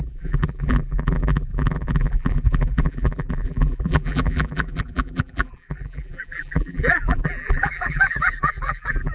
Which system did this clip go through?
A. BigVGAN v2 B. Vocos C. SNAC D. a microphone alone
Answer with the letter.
A